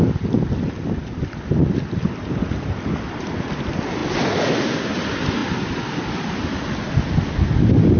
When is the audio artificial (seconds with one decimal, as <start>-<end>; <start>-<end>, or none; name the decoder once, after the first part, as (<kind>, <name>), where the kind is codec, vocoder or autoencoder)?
none